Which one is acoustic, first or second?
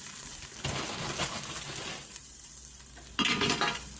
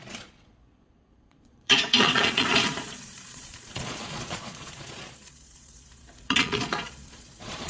first